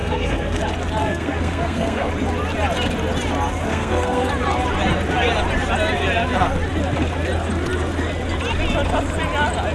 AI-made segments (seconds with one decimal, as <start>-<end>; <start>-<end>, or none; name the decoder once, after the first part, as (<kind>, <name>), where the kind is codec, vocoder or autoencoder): 0.0-0.6 (codec, SNAC); 1.0-2.1; 3.7-4.3